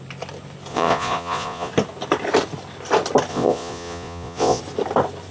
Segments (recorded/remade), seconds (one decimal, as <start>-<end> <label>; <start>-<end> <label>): 0.0-0.7 recorded; 0.7-1.7 remade; 1.7-3.3 recorded; 3.3-4.6 remade; 4.6-5.3 recorded